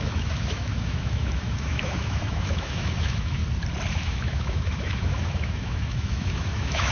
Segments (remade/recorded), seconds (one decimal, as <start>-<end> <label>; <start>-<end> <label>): 0.0-3.4 remade; 3.4-3.9 recorded; 3.9-6.9 remade